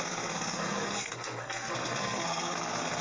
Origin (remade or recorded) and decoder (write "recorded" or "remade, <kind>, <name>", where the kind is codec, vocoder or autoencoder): remade, codec, SNAC